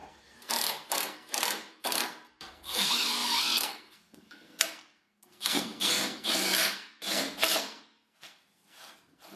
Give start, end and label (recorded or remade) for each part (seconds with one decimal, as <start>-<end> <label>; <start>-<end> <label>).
0.0-9.4 remade